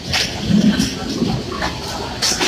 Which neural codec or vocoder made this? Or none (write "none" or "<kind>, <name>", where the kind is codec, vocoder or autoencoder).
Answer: none